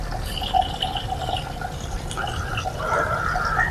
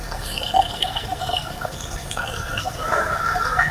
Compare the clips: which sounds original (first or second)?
first